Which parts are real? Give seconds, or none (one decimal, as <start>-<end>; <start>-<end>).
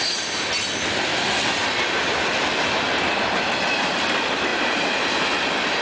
0.0-5.8